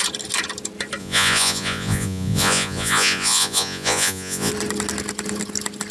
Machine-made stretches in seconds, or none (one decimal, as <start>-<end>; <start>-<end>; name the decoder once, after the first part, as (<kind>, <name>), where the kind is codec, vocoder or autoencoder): 1.0-4.5 (vocoder, Vocos)